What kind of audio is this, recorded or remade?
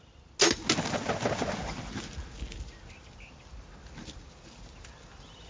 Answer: recorded